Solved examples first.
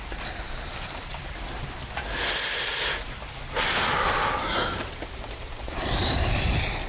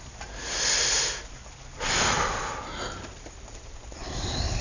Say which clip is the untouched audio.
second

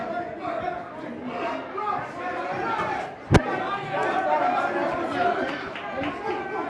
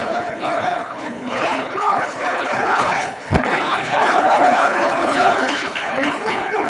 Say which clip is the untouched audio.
first